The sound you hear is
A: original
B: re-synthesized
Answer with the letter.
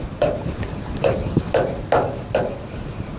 B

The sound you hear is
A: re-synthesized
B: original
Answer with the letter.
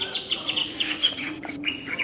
A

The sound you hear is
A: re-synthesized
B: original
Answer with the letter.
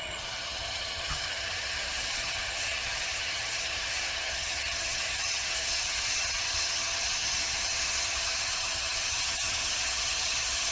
A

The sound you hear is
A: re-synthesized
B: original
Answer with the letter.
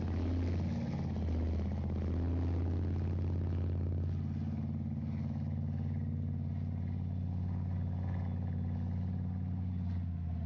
B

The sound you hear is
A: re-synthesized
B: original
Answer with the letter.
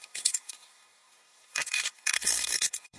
A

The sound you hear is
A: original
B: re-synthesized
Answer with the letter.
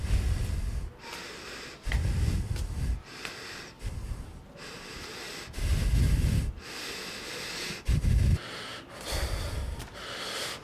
A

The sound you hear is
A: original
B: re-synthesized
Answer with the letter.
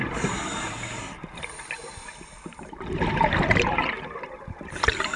A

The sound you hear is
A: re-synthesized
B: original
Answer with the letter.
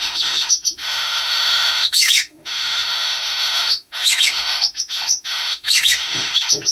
A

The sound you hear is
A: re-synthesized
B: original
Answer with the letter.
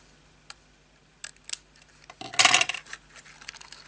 B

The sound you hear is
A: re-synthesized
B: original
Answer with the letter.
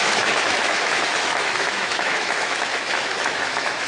A